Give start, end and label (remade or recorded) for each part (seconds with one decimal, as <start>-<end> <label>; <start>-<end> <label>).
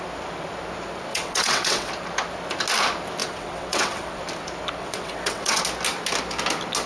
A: 0.0-1.1 recorded; 1.1-1.9 remade; 1.9-3.2 recorded; 3.2-4.2 remade; 4.2-4.8 recorded; 4.8-5.6 remade; 5.6-6.9 recorded